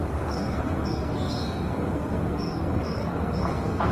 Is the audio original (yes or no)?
no